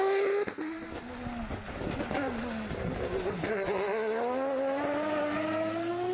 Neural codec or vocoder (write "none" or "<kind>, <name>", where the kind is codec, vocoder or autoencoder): none